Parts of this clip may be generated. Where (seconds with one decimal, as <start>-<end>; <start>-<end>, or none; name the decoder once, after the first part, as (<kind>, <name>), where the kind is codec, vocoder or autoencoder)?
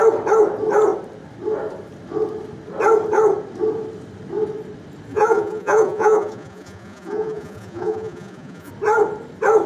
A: 5.1-8.7 (vocoder, Vocos)